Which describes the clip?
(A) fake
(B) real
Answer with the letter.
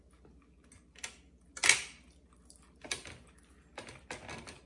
B